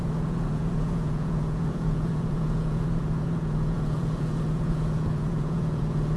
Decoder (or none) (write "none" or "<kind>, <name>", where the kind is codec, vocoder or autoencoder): vocoder, Vocos